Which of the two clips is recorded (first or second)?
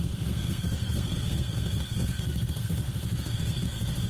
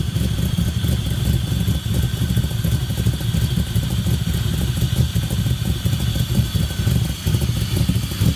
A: second